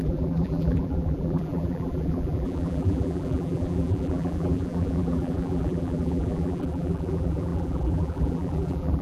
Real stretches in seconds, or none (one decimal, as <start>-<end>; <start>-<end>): none